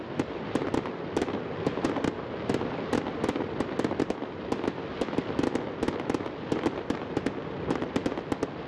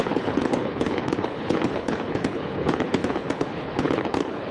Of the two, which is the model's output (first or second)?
second